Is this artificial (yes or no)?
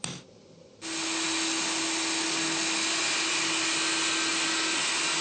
no